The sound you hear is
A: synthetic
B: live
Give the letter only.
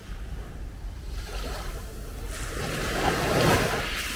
B